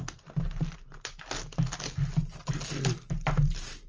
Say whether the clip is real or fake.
real